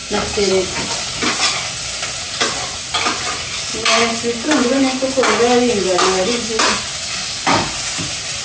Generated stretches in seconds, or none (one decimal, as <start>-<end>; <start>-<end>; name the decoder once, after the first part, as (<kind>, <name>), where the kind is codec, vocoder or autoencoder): 0.0-0.5 (codec, DAC); 6.9-7.7